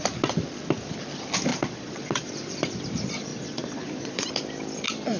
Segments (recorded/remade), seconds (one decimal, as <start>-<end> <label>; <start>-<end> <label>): 0.0-1.5 recorded; 1.5-2.3 remade; 2.3-3.3 recorded; 3.3-4.3 remade; 4.3-5.2 recorded